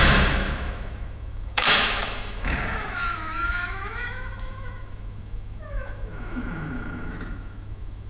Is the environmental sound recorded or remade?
remade